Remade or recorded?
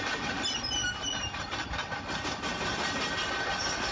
recorded